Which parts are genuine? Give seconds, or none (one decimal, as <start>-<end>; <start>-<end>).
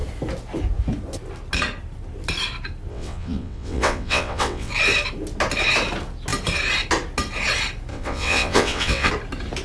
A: 0.0-2.9; 4.7-7.9; 9.1-9.6